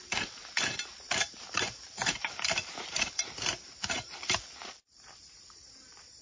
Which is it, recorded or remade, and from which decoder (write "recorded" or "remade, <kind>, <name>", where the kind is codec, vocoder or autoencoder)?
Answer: remade, vocoder, BigVGAN v2